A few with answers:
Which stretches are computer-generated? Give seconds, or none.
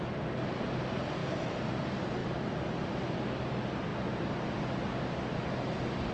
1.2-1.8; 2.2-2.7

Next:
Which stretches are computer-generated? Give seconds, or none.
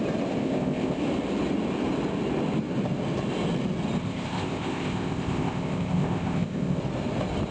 0.4-1.0; 4.0-6.8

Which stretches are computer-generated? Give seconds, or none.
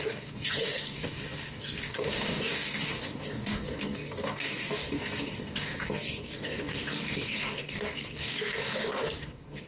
0.0-9.7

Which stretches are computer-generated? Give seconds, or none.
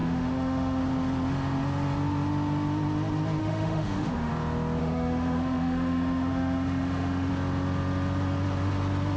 0.0-0.8; 3.4-4.3; 4.8-7.3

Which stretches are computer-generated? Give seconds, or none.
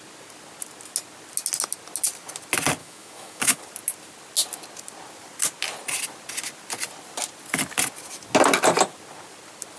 2.8-3.6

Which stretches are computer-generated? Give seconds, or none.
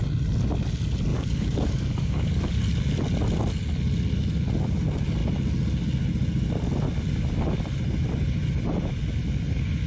1.1-2.6